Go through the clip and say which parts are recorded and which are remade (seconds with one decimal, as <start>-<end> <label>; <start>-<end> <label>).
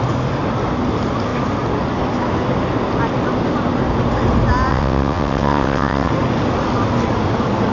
0.0-4.7 recorded; 4.7-6.1 remade; 6.1-7.7 recorded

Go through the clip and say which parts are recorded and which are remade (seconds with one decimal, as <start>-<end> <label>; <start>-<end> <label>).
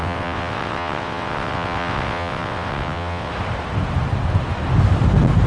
0.0-3.3 remade; 3.3-5.5 recorded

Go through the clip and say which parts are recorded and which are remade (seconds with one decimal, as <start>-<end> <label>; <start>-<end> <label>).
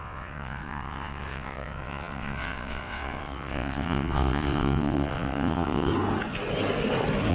0.0-5.9 remade; 5.9-7.3 recorded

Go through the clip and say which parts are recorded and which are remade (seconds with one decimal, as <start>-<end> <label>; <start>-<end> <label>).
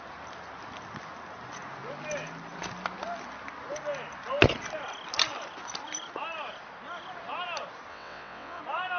0.0-7.9 recorded; 7.9-8.6 remade; 8.6-9.0 recorded